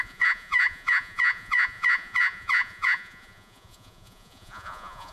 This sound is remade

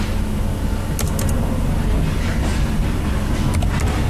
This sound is recorded